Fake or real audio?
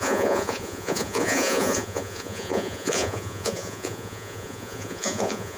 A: fake